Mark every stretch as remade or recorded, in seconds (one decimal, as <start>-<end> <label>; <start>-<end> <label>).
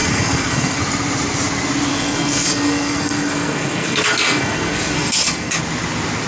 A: 0.0-0.8 remade; 0.8-1.9 recorded; 1.9-5.6 remade; 5.6-6.3 recorded